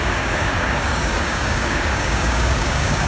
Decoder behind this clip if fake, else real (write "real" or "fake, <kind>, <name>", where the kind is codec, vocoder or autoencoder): fake, codec, DAC